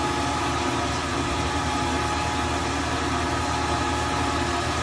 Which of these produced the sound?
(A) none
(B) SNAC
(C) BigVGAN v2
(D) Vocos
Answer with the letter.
A